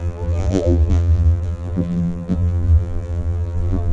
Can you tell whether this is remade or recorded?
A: remade